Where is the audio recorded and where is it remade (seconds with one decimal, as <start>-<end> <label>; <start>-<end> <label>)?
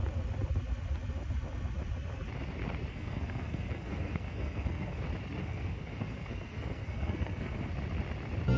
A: 0.0-2.9 recorded; 2.9-5.0 remade; 5.0-5.4 recorded; 5.4-7.7 remade; 7.7-8.6 recorded